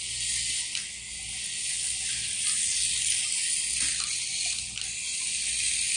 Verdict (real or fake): real